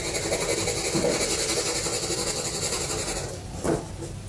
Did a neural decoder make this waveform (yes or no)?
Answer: no